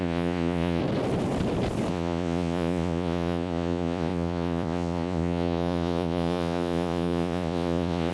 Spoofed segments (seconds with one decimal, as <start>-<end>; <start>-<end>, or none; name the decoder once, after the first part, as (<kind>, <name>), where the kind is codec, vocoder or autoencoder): 0.0-0.8 (vocoder, Vocos); 1.9-8.1